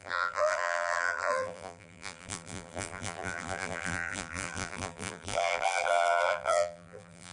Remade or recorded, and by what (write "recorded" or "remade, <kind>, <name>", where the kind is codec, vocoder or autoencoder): remade, vocoder, BigVGAN v2